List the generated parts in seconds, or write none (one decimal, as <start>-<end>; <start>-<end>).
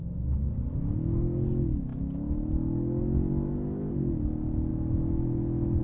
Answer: none